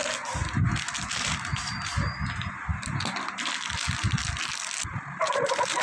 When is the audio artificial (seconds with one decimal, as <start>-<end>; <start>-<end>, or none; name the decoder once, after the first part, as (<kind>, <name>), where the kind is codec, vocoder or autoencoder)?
none